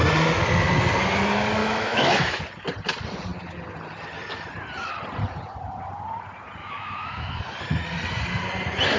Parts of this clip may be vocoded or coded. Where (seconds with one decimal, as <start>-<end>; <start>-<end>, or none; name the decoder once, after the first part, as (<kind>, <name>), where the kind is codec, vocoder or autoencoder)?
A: 1.6-2.4 (autoencoder, DAC-VAE); 6.6-7.4